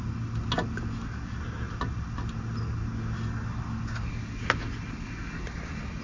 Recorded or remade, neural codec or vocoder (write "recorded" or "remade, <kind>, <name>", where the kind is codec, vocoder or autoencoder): recorded